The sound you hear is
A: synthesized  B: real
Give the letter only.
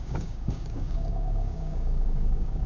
A